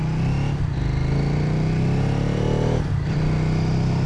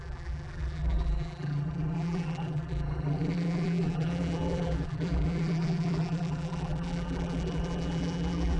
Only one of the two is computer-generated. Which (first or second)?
second